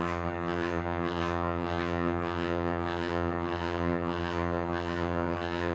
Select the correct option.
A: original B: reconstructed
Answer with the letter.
B